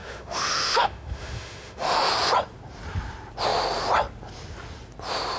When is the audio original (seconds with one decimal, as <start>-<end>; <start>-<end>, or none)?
2.1-5.4